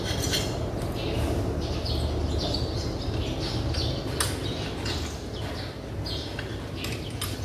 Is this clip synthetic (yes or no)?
no